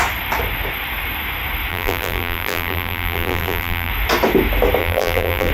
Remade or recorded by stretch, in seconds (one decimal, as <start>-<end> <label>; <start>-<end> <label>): 0.0-1.7 recorded; 1.7-3.9 remade; 3.9-4.8 recorded; 4.8-5.5 remade